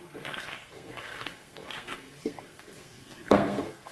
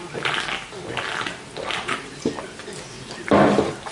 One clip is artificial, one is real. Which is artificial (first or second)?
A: first